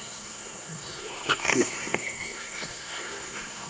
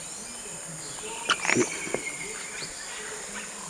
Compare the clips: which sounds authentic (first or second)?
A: second